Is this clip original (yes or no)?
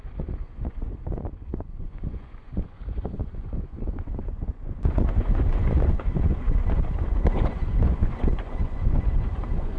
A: no